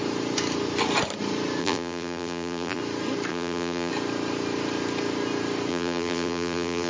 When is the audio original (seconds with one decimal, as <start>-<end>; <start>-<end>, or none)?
0.0-1.6; 2.8-3.3; 3.9-5.7